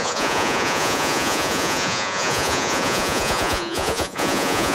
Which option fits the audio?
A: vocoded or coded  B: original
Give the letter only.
A